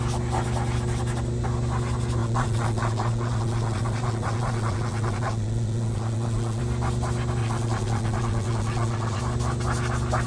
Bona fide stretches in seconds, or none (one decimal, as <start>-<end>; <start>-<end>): 0.0-2.2; 6.6-7.4; 9.2-10.3